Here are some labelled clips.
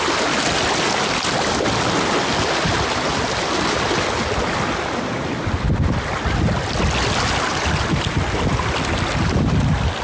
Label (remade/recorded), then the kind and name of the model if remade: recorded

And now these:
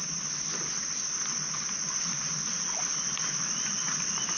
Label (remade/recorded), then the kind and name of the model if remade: recorded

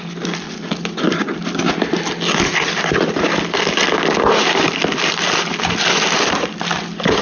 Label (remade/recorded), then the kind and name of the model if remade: recorded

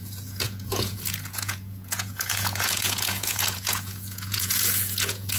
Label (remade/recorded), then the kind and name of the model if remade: remade, vocoder, Vocos